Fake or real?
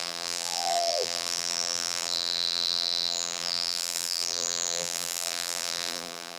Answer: fake